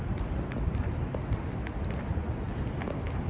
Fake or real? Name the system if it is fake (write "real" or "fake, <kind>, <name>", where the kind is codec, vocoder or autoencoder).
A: real